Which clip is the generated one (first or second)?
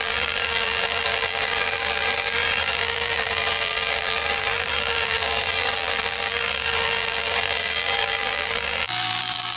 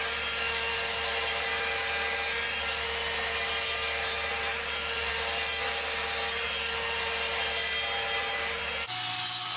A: first